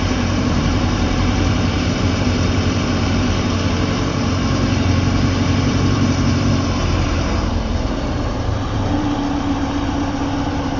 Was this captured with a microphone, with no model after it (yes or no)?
no